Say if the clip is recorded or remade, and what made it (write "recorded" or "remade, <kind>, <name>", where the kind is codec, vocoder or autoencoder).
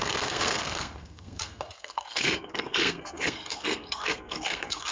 remade, codec, SNAC